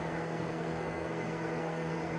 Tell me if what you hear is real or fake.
fake